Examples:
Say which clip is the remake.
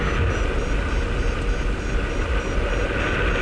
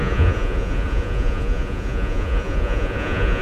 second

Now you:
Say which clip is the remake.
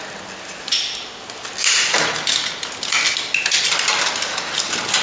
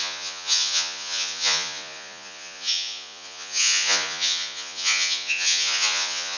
second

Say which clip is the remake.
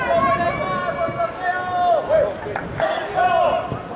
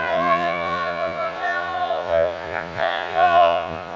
second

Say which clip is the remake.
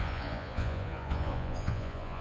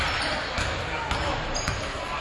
first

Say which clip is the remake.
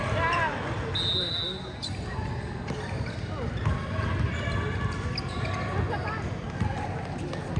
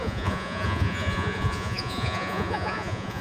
second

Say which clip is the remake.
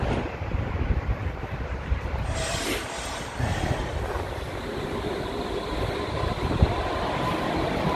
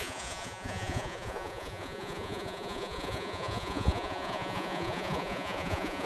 second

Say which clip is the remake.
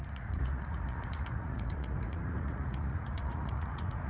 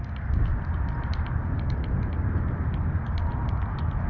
first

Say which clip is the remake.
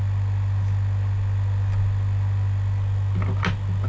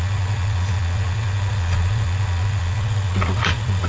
second